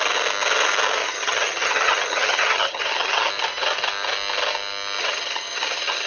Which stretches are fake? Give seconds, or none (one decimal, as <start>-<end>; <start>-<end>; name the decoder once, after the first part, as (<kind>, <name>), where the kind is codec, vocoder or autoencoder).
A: 1.0-3.3 (vocoder, HiFi-GAN); 5.0-6.1